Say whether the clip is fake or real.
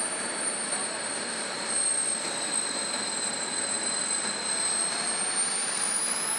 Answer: fake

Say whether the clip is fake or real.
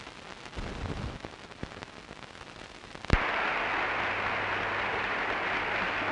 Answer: real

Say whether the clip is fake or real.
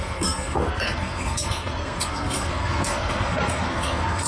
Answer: fake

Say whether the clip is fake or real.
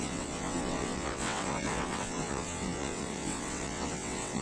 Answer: fake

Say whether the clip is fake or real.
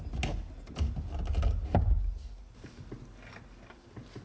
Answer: real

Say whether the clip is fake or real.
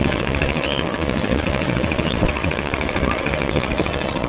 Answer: fake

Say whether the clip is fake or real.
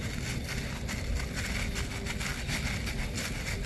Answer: real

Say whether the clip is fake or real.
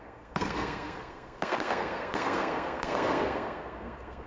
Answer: fake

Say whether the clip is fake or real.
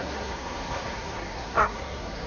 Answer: fake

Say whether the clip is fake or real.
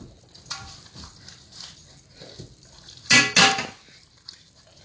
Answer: real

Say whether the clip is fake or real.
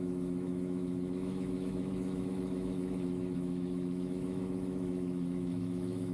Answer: fake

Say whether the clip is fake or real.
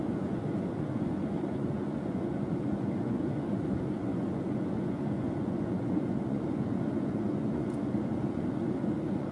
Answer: fake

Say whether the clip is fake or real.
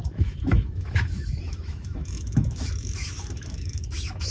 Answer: fake